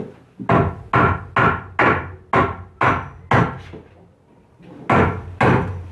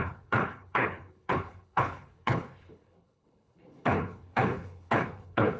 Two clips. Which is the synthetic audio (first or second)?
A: second